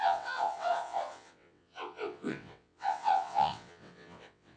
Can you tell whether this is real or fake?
fake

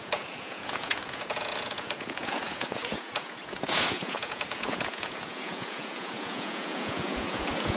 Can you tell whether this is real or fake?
fake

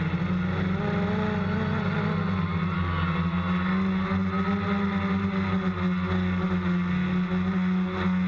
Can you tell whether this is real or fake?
real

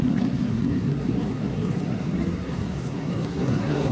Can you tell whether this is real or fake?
fake